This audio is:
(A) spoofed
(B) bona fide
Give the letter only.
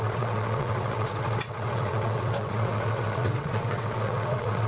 A